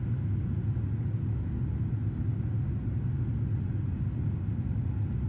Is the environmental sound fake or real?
real